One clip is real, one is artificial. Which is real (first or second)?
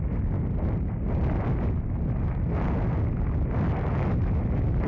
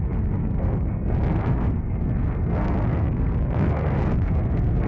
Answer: first